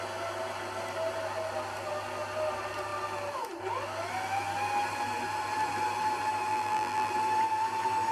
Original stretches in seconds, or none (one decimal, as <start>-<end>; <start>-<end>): 0.0-6.5; 7.1-8.1